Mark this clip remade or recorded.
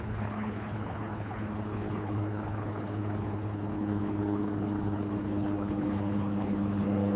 remade